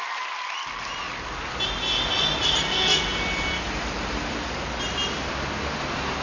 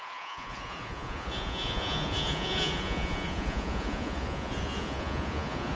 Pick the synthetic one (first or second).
second